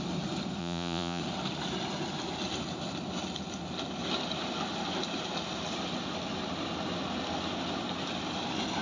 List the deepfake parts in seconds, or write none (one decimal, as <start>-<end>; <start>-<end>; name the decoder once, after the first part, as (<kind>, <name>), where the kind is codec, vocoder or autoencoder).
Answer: 0.6-1.2 (vocoder, Vocos)